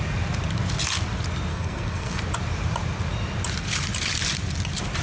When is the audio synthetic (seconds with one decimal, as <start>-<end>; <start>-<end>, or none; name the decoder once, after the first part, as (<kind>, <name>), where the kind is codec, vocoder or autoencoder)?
1.5-2.2 (codec, SNAC)